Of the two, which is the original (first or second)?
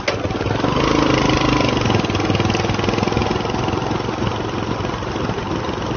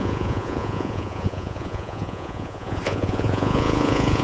first